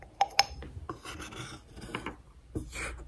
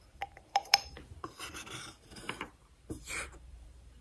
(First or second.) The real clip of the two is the first